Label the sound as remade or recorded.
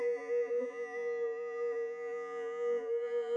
remade